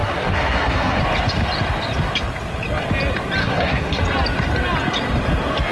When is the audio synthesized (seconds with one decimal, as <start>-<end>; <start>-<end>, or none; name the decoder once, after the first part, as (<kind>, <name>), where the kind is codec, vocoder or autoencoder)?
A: 0.0-1.0 (codec, SNAC); 3.4-4.0